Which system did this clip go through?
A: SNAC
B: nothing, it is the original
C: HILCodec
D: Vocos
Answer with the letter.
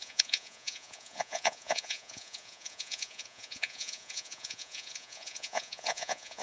D